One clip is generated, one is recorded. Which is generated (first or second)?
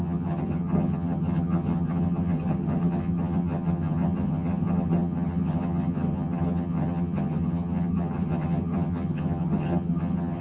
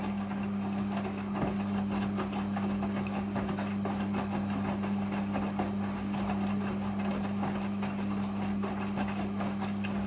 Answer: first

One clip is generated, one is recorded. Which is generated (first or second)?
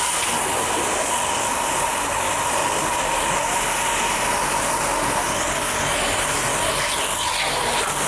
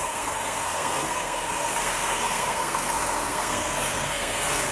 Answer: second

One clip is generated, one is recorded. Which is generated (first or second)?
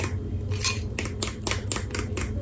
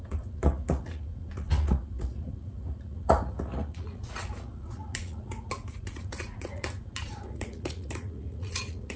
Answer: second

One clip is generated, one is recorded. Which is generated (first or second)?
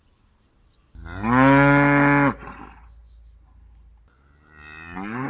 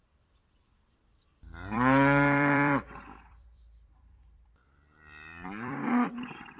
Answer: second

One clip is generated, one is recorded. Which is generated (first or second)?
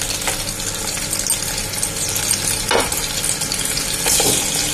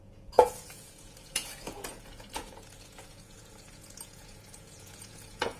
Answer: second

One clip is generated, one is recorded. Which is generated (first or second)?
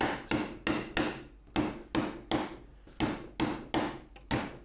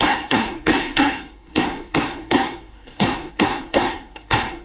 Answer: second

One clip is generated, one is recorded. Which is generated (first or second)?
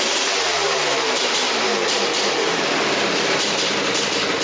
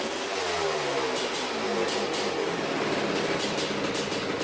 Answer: first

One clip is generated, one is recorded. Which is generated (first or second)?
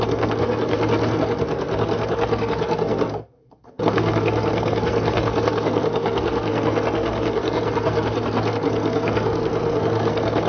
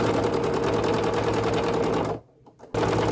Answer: first